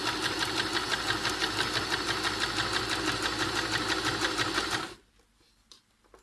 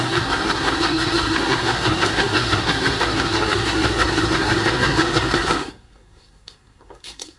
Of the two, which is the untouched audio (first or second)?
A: first